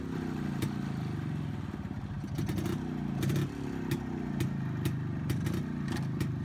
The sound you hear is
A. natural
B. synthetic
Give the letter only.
A